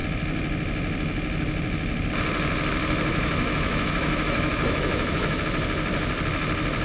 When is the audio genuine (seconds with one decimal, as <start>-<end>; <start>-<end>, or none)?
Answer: 0.0-3.1; 5.4-6.8